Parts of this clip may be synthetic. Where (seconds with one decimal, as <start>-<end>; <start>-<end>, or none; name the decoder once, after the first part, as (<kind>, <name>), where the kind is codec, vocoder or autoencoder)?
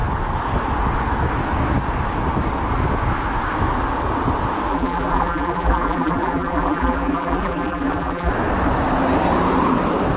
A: 4.7-8.3 (vocoder, BigVGAN v2)